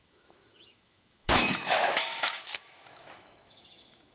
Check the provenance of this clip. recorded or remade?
remade